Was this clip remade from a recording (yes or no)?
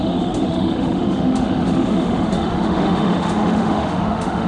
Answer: yes